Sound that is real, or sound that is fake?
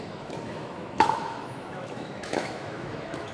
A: fake